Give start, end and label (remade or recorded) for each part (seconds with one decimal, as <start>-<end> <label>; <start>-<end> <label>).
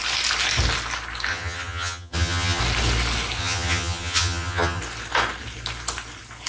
0.0-1.3 recorded; 1.3-2.6 remade; 2.6-3.4 recorded; 3.4-4.8 remade; 4.8-6.5 recorded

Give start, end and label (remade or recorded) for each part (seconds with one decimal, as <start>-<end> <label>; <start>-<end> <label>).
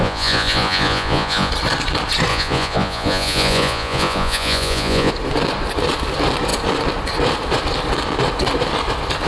0.0-1.5 remade; 1.5-2.3 recorded; 2.3-5.1 remade; 5.1-9.3 recorded